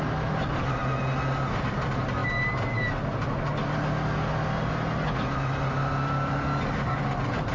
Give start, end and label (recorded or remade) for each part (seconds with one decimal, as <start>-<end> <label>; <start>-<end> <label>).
0.0-7.5 recorded